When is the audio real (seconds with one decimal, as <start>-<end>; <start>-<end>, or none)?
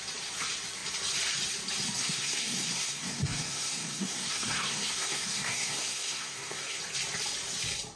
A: 0.0-2.0; 6.8-8.0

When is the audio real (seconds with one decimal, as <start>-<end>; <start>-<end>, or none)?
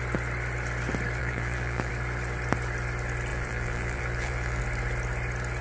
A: 0.0-1.2; 1.9-3.3; 4.6-5.6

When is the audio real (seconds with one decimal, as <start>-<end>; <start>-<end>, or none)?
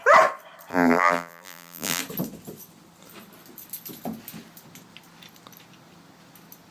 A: 0.0-0.7; 2.0-6.7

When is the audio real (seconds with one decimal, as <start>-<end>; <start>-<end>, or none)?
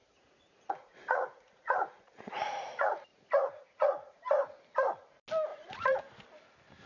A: 2.6-3.1; 4.2-5.5; 6.0-6.9